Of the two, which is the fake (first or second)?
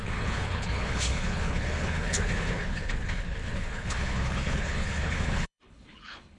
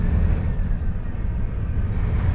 first